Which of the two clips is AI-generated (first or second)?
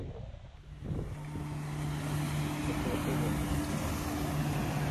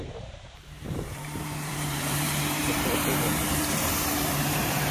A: second